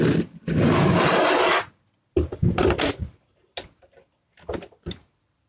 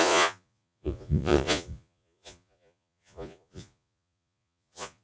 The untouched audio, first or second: first